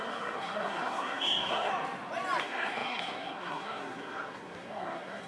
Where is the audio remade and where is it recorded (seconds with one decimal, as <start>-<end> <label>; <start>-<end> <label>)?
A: 0.0-1.7 remade; 1.7-2.4 recorded; 2.4-5.3 remade